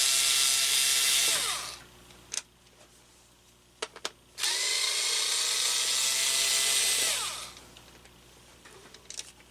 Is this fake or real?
real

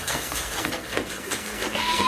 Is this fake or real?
fake